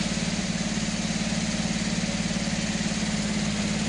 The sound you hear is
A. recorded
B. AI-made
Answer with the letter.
A